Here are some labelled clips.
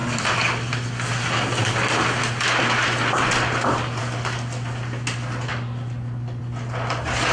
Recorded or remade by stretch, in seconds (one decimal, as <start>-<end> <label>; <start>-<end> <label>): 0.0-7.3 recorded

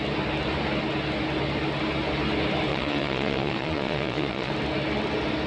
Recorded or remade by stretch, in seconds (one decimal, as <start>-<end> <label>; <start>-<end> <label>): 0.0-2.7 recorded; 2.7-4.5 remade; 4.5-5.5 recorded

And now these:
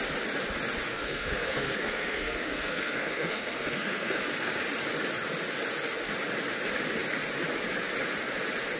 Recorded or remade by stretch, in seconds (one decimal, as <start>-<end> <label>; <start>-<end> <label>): 0.0-0.9 recorded; 0.9-4.2 remade; 4.2-8.8 recorded

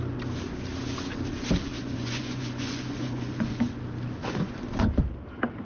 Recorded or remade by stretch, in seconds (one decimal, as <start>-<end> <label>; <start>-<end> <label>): 0.0-1.7 recorded; 1.7-3.8 remade; 3.8-4.2 recorded; 4.2-5.0 remade; 5.0-5.7 recorded

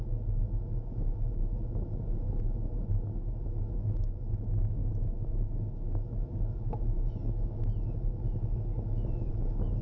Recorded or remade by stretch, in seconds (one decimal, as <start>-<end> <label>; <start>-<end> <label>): 0.0-9.8 remade

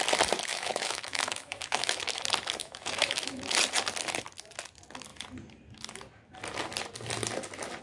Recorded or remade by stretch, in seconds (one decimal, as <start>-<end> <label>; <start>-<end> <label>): 0.0-0.5 recorded; 0.5-2.2 remade; 2.2-2.6 recorded; 2.6-3.4 remade; 3.4-7.8 recorded